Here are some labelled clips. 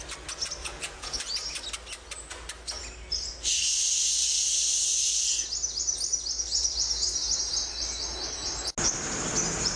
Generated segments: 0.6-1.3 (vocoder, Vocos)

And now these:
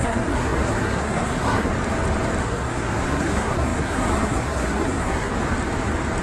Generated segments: 0.0-1.7 (codec, SNAC); 2.4-5.3

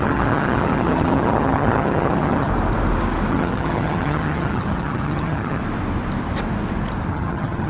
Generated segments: 0.0-2.5 (vocoder, HiFi-GAN); 3.3-5.6; 7.1-7.7

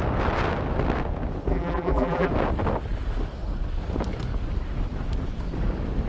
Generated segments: 1.5-2.3 (vocoder, BigVGAN v2)

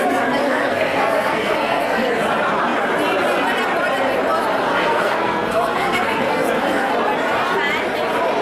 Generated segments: 0.4-2.1 (codec, SNAC); 4.7-6.9

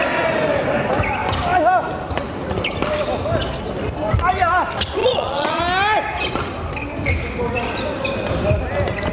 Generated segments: 5.0-5.6 (vocoder, Vocos)